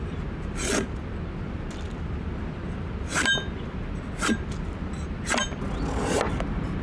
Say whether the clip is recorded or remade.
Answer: recorded